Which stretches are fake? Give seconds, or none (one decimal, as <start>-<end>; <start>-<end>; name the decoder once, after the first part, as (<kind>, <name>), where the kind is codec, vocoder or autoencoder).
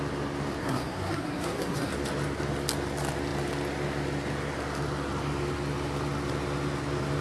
0.6-1.9 (codec, SNAC)